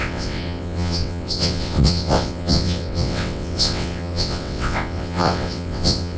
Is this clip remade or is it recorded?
remade